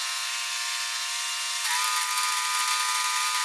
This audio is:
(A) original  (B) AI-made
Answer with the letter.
A